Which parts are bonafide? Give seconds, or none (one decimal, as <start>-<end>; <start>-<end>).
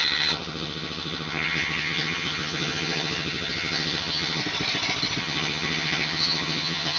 4.4-5.2